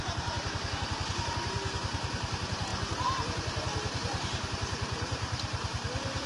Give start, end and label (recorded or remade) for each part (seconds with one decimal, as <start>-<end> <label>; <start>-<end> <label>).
0.0-6.3 remade